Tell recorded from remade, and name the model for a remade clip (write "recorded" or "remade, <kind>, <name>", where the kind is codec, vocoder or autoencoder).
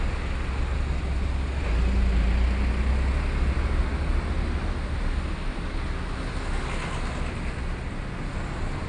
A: recorded